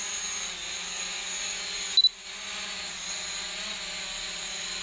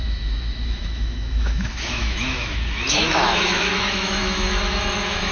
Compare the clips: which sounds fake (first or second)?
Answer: second